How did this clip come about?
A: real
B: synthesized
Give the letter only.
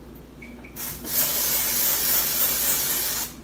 A